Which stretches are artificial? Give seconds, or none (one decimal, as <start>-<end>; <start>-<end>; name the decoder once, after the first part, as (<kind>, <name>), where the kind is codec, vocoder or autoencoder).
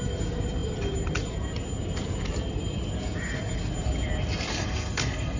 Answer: 4.5-5.4 (codec, SNAC)